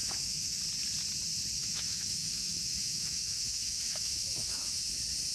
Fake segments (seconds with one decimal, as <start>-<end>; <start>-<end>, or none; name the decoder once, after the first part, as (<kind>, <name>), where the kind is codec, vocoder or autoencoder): 0.0-0.6 (autoencoder, DAC-VAE); 1.6-4.8